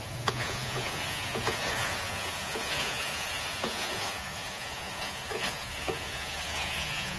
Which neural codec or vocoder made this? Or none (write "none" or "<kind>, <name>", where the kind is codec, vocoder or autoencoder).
vocoder, Vocos